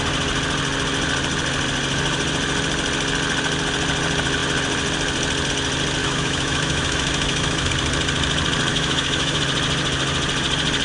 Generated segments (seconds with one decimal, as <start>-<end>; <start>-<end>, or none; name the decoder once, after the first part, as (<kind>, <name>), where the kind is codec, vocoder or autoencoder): 6.0-7.7 (autoencoder, DAC-VAE); 8.7-9.4